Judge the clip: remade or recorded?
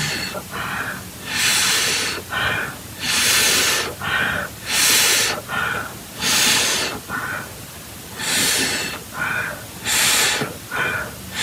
recorded